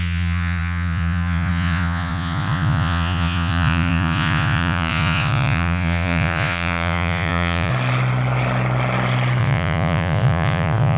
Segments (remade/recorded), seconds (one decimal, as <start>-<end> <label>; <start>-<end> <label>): 0.0-7.7 remade; 7.7-9.4 recorded; 9.4-11.0 remade